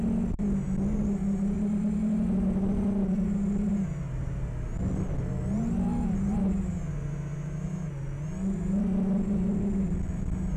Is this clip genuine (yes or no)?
yes